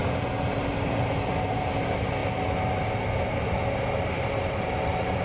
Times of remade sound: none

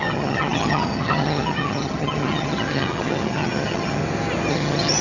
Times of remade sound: 0.0-4.0 (vocoder, HiFi-GAN); 4.5-5.0

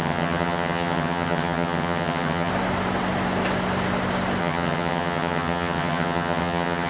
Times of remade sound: 0.0-2.5 (vocoder, HiFi-GAN); 4.4-6.9

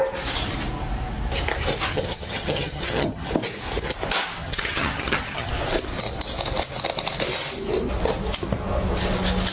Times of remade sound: 1.9-3.3 (vocoder, HiFi-GAN); 4.4-5.5

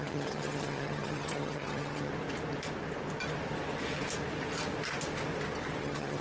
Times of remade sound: 0.0-2.1 (vocoder, HiFi-GAN); 5.8-6.2